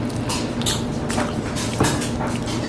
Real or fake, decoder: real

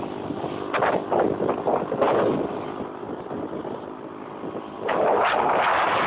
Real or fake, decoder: real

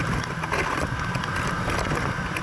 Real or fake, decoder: real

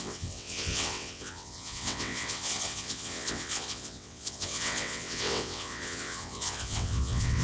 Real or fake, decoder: fake, vocoder, WaveNeXt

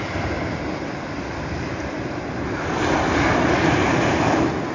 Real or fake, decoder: real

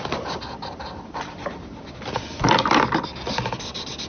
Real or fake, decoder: real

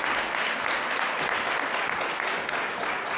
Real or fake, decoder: real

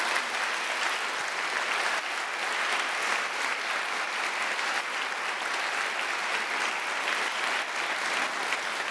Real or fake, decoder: real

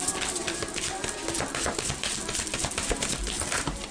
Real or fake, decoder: real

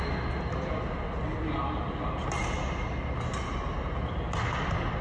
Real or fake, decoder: real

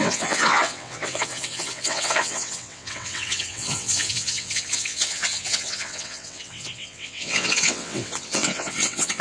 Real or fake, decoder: fake, vocoder, WaveNeXt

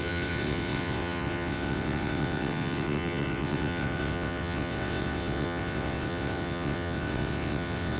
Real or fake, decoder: fake, vocoder, WaveNeXt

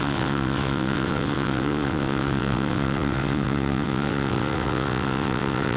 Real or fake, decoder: fake, vocoder, WaveNeXt